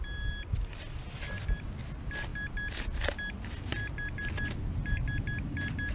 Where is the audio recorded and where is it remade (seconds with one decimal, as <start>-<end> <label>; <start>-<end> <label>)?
0.0-5.9 recorded